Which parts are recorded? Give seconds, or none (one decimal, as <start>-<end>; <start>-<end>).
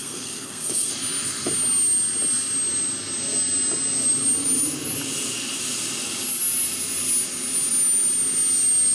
0.9-8.9